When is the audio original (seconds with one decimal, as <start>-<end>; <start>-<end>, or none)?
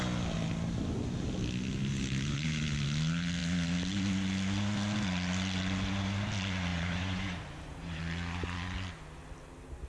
0.0-6.7; 8.0-9.9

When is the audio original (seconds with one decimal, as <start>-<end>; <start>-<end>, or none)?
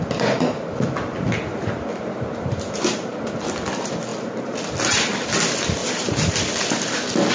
0.0-1.5; 3.3-5.8; 6.4-7.3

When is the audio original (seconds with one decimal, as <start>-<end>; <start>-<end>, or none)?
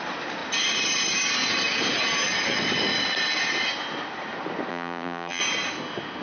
0.0-4.7; 5.4-6.2